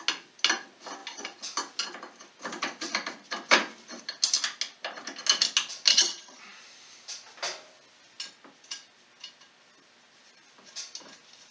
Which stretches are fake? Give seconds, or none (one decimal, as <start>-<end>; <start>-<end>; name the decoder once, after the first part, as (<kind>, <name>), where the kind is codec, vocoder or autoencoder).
5.9-6.4 (vocoder, HiFi-GAN)